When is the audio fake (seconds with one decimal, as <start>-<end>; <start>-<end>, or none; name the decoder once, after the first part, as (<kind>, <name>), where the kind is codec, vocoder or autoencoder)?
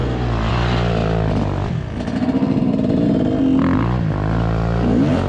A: none